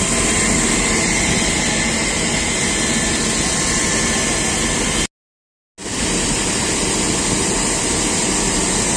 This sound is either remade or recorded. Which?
recorded